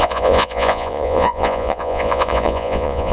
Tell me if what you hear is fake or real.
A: fake